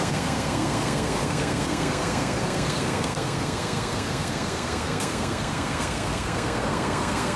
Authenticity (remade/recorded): remade